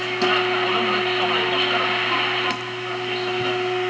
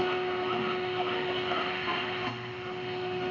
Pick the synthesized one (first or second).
second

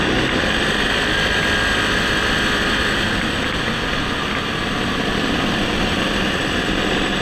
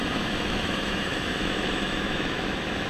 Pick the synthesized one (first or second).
second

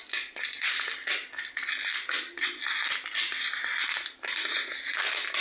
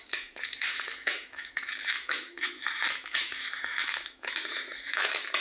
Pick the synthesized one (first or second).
second